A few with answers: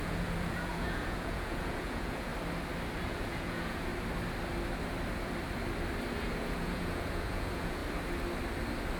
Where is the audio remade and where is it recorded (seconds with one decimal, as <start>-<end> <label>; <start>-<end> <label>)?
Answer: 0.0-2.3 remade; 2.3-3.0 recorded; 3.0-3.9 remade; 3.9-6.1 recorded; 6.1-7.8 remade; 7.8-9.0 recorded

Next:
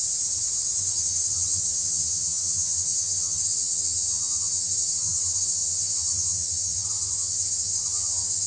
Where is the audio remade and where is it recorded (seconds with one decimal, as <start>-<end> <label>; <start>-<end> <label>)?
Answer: 0.0-0.8 recorded; 0.8-8.5 remade

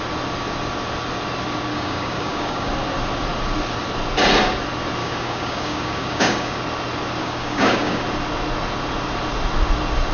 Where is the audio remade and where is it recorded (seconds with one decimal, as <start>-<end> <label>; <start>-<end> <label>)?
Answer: 0.0-1.7 recorded; 1.7-2.7 remade; 2.7-5.0 recorded; 5.0-6.6 remade; 6.6-7.2 recorded; 7.2-8.0 remade; 8.0-10.1 recorded